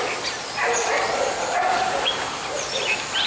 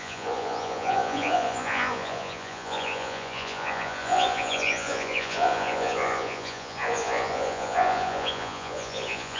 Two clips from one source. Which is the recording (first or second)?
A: first